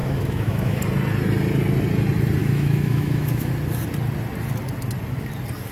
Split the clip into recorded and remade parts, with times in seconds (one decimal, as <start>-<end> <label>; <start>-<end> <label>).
0.0-0.8 remade; 0.8-2.4 recorded; 2.4-3.5 remade; 3.5-5.7 recorded